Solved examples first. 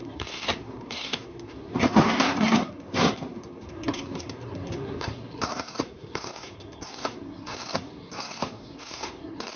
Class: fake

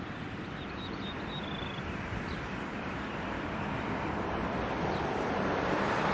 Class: fake